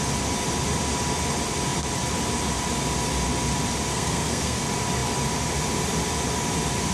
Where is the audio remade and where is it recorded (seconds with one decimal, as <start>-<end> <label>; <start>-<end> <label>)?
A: 0.0-3.9 recorded; 3.9-4.6 remade; 4.6-6.9 recorded